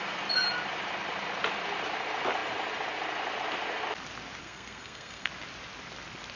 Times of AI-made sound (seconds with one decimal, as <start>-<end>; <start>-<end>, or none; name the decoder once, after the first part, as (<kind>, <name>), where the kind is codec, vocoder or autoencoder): 4.4-5.3 (codec, SNAC)